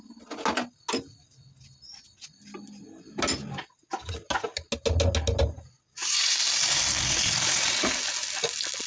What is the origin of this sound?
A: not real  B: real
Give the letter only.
B